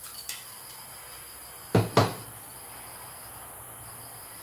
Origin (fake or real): real